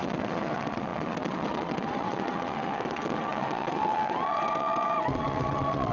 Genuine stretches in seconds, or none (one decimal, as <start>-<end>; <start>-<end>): none